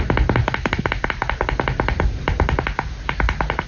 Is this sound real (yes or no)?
yes